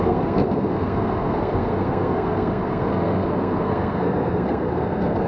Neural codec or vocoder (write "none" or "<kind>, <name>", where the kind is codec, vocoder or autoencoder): codec, SNAC